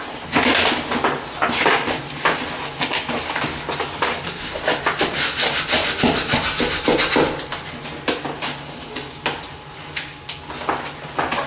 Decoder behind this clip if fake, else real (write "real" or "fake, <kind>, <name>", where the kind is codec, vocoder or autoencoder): real